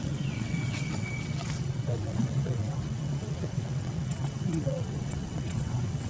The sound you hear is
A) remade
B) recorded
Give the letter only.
A